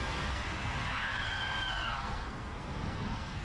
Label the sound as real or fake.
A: fake